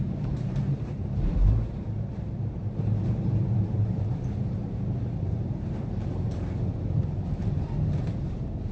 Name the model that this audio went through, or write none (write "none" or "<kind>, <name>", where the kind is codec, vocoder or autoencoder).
vocoder, BigVGAN v2